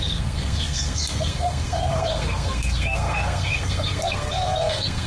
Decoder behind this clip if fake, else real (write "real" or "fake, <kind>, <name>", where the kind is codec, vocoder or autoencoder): fake, codec, SNAC